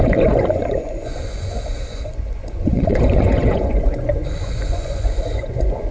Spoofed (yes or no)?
yes